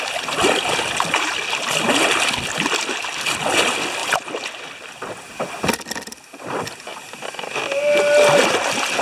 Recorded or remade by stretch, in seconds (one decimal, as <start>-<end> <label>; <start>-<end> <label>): 0.0-6.9 recorded; 6.9-7.6 remade; 7.6-9.0 recorded